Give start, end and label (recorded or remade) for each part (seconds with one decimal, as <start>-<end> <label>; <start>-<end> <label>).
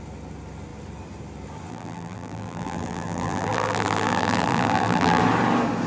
0.0-1.7 recorded; 1.7-5.2 remade; 5.2-5.9 recorded